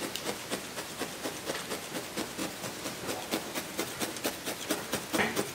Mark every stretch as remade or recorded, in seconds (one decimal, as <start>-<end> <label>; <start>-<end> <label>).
0.0-5.5 recorded